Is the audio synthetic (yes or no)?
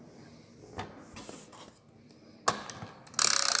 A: no